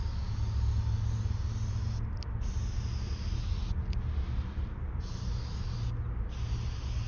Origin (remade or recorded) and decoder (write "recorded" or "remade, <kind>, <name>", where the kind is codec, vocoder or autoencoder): recorded